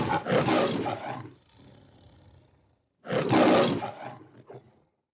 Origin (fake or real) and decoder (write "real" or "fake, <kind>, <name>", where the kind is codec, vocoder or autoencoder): real